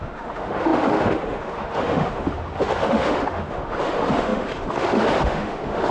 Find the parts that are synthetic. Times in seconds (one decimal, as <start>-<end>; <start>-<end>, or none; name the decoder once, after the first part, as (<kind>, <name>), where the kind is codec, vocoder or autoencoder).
0.0-5.9 (autoencoder, DAC-VAE)